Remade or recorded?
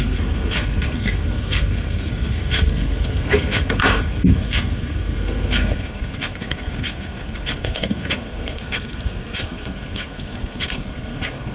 remade